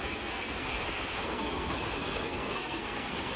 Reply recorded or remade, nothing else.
remade